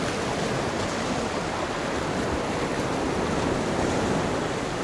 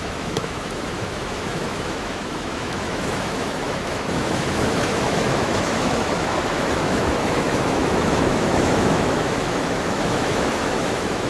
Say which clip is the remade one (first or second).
second